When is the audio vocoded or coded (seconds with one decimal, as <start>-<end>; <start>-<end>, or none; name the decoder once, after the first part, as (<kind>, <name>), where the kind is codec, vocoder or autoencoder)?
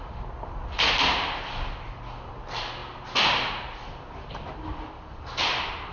none